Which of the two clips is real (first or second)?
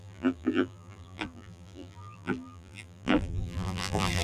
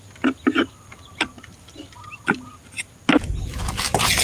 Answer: second